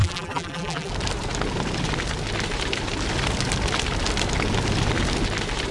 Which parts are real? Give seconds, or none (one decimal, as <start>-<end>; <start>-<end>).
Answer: 0.9-5.7